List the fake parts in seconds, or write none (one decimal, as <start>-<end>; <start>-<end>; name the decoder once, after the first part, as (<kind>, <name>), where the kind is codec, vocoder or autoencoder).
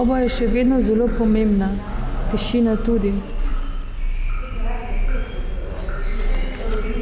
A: none